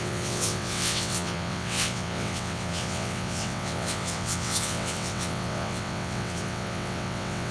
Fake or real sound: fake